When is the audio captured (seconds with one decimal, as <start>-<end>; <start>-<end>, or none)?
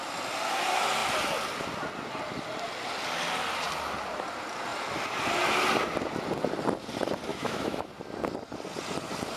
0.0-7.3; 7.9-9.4